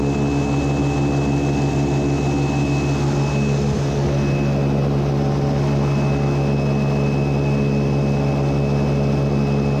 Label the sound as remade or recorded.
recorded